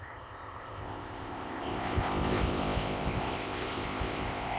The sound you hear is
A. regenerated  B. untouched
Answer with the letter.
A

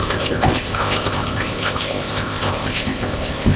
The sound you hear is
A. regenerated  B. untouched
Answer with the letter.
A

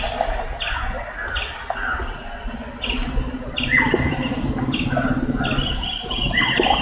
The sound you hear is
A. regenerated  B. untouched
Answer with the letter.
B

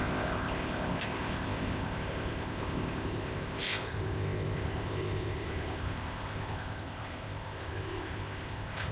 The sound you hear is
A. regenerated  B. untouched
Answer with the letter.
A